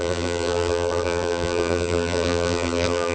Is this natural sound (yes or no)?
no